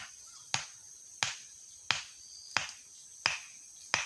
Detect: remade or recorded recorded